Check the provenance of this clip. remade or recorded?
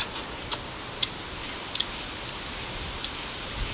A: recorded